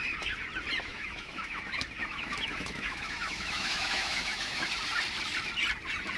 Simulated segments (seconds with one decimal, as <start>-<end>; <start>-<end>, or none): 0.9-1.6; 2.0-4.7

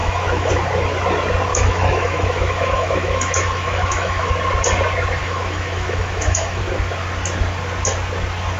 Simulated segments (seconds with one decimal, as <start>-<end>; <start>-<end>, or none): 0.0-0.5; 1.5-4.3; 5.2-6.6

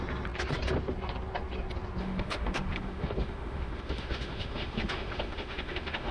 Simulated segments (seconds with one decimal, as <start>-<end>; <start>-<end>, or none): 2.0-6.1

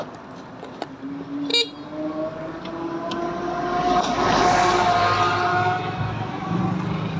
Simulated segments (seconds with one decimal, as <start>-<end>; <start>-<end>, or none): 5.5-6.6

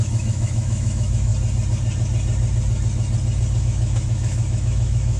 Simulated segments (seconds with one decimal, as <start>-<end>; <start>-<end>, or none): 0.0-1.3; 3.6-5.2